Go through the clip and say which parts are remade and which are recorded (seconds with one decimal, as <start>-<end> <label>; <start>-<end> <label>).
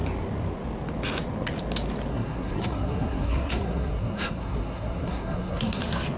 0.0-2.1 recorded; 2.1-5.8 remade; 5.8-6.2 recorded